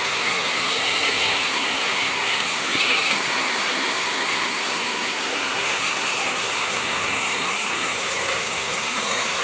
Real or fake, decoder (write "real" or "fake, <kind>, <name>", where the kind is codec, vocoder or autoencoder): fake, codec, SNAC